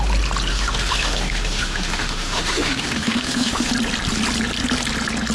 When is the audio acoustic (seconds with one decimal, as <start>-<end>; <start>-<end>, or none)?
0.0-0.5; 3.7-5.3